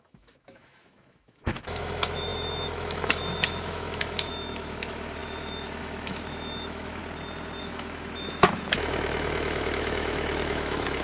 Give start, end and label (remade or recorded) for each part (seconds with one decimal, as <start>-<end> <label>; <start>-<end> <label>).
0.0-7.0 remade; 7.0-7.6 recorded; 7.6-11.0 remade